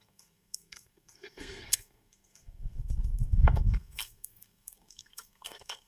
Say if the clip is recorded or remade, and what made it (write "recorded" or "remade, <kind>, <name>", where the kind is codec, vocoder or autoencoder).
remade, codec, SNAC